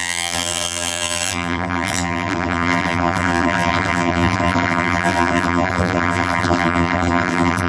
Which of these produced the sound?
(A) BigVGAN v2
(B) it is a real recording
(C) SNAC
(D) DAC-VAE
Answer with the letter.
A